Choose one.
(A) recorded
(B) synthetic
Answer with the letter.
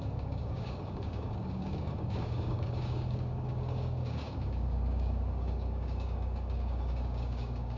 B